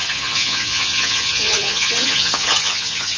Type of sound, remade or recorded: remade